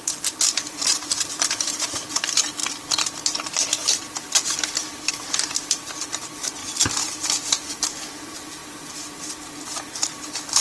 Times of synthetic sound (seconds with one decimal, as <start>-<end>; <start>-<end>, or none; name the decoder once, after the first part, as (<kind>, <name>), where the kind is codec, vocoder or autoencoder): 0.0-6.6 (vocoder, BigVGAN v2); 7.1-8.6; 9.6-10.6